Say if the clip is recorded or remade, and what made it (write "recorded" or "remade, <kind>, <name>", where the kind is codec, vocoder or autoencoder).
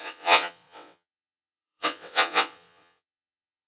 remade, vocoder, WaveNeXt